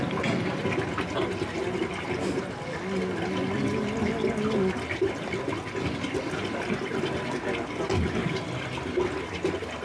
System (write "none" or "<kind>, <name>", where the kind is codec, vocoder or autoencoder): none